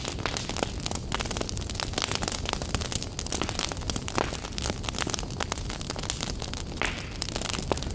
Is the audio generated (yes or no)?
no